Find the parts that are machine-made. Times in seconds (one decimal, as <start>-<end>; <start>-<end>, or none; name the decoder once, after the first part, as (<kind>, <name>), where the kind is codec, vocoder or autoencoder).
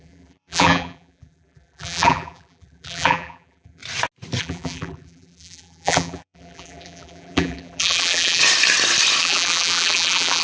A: 0.0-3.8 (vocoder, BigVGAN v2); 4.4-8.4; 9.2-10.4